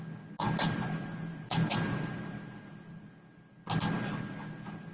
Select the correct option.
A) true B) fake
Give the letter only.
A